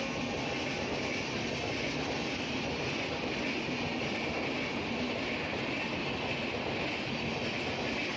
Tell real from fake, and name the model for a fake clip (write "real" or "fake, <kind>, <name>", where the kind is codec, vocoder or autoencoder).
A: real